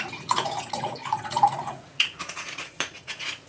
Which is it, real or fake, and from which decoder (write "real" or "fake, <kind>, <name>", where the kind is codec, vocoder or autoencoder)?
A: fake, vocoder, Vocos